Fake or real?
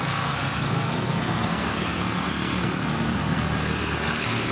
fake